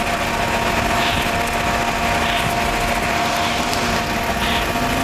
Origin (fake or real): real